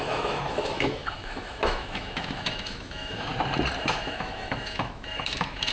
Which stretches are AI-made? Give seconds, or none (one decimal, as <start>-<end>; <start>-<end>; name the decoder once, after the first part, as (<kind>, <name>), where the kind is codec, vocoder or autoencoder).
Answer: 0.0-3.3 (autoencoder, DAC-VAE); 3.8-5.7